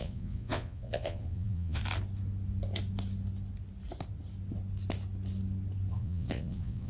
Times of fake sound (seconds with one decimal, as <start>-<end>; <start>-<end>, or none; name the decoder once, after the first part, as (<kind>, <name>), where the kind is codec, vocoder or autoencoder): 0.0-1.8 (vocoder, Vocos); 5.9-6.9